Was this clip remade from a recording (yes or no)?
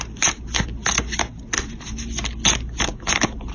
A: no